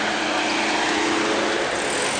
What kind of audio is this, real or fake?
real